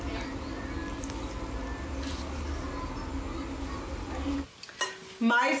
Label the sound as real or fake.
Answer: real